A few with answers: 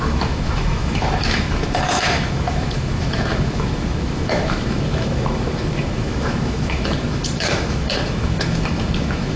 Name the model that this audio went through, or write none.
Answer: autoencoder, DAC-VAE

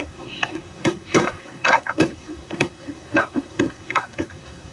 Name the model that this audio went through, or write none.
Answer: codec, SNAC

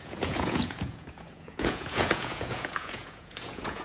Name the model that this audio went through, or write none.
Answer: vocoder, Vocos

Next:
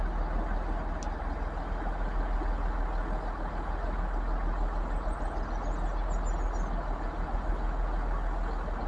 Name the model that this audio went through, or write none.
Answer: none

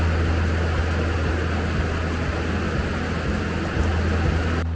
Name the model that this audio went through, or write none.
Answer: none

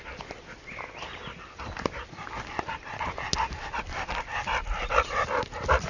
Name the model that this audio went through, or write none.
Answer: none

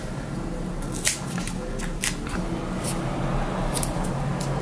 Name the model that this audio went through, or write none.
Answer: none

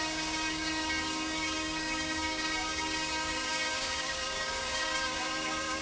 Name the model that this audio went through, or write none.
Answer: codec, DAC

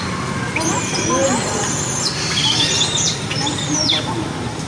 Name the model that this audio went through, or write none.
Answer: none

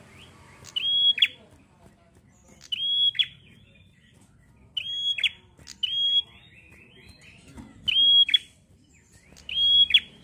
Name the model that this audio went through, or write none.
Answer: none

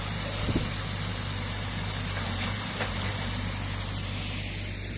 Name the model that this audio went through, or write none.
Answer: none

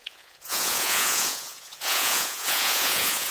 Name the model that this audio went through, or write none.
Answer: vocoder, Vocos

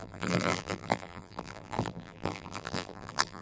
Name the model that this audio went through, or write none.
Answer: vocoder, BigVGAN v2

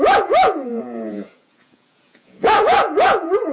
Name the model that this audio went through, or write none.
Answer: vocoder, Vocos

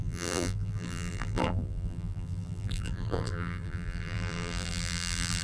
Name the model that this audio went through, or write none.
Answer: vocoder, BigVGAN v2